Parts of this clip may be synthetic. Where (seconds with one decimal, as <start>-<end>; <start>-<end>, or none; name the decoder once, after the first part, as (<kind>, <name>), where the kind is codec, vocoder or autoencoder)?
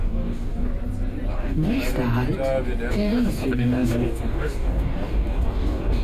0.0-0.7 (codec, DAC); 1.3-1.8; 2.9-6.0